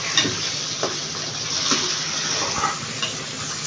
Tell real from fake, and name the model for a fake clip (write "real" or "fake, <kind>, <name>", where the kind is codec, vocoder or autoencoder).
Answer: real